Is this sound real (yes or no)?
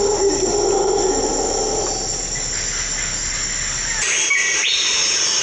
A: yes